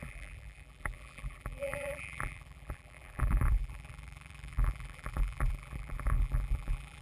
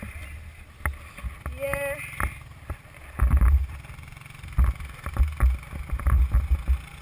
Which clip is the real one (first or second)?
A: second